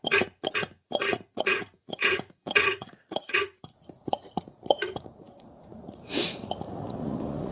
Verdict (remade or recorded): remade